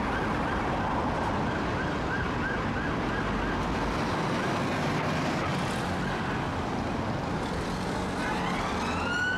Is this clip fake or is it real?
real